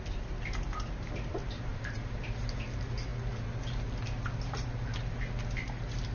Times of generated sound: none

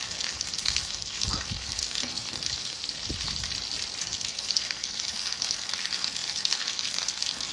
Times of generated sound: 0.0-2.8 (codec, SNAC); 4.0-7.5

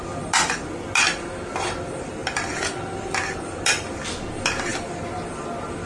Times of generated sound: none

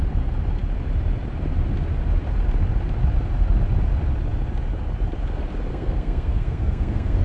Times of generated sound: 5.7-7.2 (codec, SNAC)

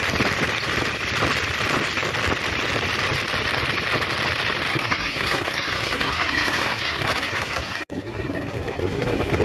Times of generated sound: 4.7-9.4 (codec, SNAC)

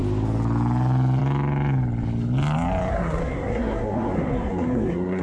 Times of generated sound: 2.9-5.2 (codec, SNAC)

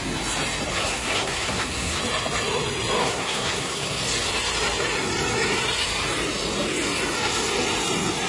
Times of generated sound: 0.7-2.0 (codec, SNAC); 3.0-4.0